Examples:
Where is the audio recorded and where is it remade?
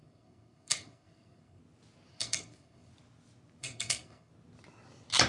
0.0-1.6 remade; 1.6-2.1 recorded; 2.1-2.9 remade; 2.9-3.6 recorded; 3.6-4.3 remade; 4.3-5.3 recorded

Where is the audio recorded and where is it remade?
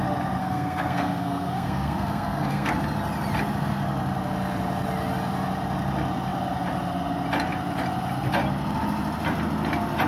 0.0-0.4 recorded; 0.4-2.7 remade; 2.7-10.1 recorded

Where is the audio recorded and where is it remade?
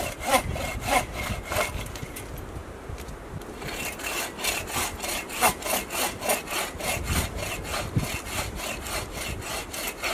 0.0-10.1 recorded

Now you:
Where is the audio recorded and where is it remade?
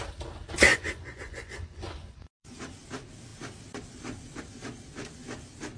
0.0-0.7 recorded; 0.7-2.7 remade; 2.7-5.8 recorded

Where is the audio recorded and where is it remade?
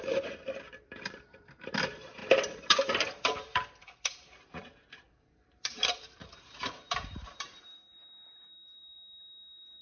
0.0-6.2 remade; 6.2-6.8 recorded; 6.8-9.8 remade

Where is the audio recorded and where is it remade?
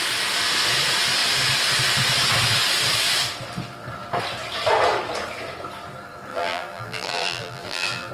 0.0-6.3 recorded; 6.3-8.1 remade